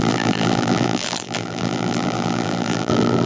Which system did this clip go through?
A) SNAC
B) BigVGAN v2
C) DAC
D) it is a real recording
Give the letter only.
B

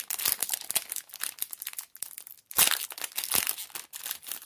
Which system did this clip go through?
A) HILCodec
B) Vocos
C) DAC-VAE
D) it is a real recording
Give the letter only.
D